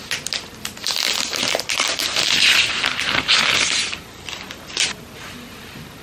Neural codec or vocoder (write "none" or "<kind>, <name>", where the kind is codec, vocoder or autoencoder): none